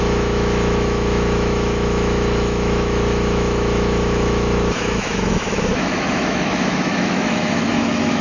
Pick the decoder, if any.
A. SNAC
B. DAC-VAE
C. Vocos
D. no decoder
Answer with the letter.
B